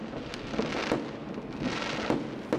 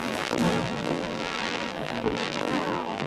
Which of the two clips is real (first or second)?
first